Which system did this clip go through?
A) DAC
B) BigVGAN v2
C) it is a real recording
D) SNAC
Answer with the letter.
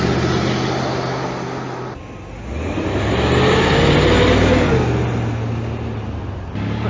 C